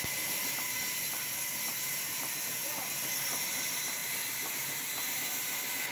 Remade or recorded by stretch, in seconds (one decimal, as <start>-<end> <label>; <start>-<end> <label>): 0.0-5.9 recorded